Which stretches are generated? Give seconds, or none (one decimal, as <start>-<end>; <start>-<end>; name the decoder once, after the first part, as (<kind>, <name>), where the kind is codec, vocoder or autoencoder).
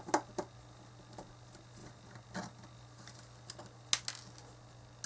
none